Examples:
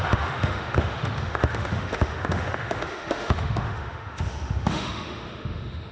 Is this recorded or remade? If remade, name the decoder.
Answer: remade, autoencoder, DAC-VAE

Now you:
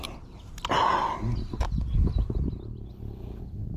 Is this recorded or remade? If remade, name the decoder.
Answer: recorded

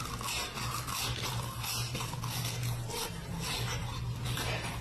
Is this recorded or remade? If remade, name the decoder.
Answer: recorded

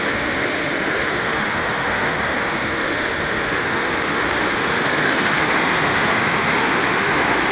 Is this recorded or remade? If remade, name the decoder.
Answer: remade, autoencoder, DAC-VAE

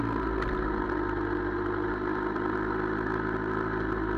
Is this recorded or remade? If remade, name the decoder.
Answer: recorded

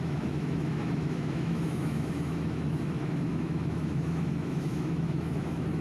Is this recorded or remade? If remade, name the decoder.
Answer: remade, autoencoder, DAC-VAE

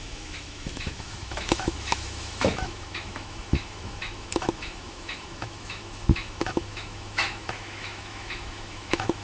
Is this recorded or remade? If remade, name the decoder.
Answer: remade, autoencoder, DAC-VAE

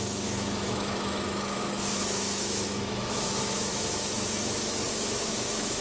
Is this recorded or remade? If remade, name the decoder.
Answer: remade, autoencoder, DAC-VAE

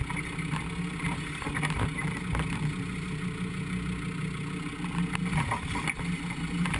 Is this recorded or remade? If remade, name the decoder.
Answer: recorded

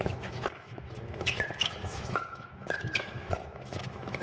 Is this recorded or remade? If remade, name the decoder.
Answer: remade, autoencoder, DAC-VAE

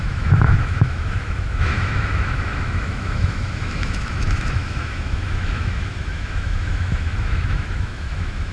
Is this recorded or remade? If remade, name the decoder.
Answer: remade, autoencoder, DAC-VAE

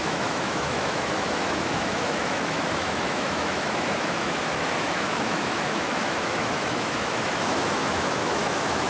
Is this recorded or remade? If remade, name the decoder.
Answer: remade, autoencoder, DAC-VAE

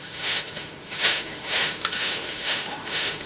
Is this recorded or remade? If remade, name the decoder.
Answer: remade, autoencoder, DAC-VAE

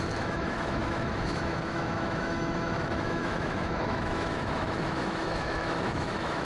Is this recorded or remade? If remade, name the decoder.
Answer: remade, autoencoder, DAC-VAE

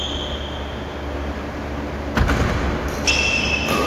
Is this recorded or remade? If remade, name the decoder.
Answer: recorded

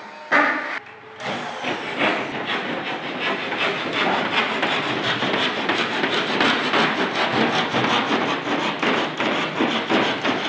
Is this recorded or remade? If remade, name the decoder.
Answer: recorded